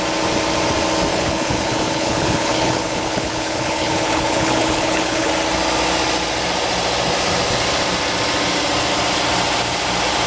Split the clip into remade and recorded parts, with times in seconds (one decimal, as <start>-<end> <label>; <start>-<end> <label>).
0.0-1.1 recorded; 1.1-5.3 remade; 5.3-10.3 recorded